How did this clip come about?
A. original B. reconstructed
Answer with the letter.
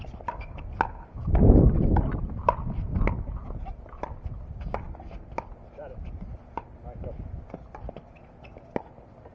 A